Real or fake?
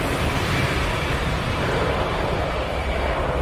fake